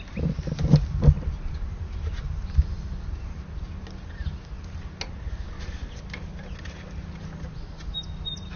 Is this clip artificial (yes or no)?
no